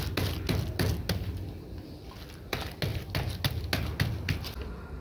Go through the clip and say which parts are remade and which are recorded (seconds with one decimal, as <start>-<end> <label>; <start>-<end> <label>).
0.0-5.0 recorded